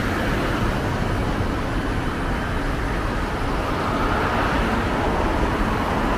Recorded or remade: recorded